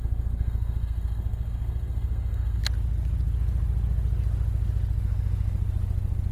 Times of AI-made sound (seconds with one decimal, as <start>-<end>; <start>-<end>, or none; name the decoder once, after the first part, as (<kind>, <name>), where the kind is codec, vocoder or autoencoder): 0.0-2.6 (codec, SNAC)